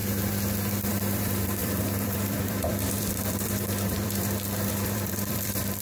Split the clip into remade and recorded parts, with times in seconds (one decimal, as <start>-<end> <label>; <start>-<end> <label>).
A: 0.0-0.9 recorded; 0.9-5.8 remade